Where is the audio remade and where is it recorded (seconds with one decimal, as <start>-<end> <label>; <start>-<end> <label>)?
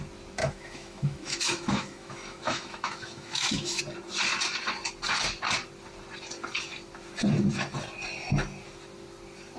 0.0-0.4 recorded; 0.4-3.8 remade; 3.8-9.6 recorded